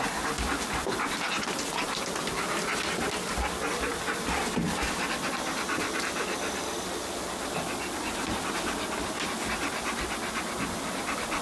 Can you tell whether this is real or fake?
real